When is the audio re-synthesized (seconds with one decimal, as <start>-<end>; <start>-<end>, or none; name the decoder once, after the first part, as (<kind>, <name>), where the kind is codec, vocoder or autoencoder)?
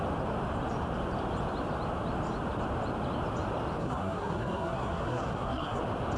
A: 3.8-5.8 (codec, SNAC)